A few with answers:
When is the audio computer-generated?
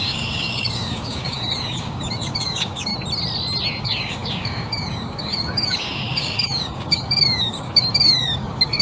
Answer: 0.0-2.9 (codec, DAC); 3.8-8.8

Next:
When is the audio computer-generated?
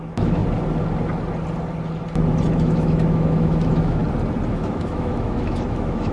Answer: 0.0-0.4 (autoencoder, DAC-VAE); 2.5-4.0; 4.5-6.1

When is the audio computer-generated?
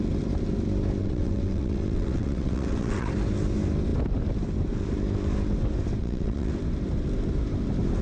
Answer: 1.0-3.1 (vocoder, WaveNeXt); 6.0-6.5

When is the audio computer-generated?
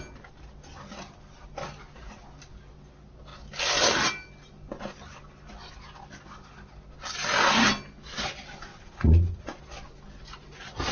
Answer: 8.7-9.6 (vocoder, Vocos)